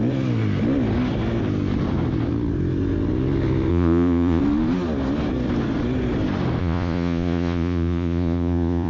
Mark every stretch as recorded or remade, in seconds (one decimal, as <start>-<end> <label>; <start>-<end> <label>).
0.0-3.7 recorded; 3.7-4.4 remade; 4.4-6.6 recorded; 6.6-8.9 remade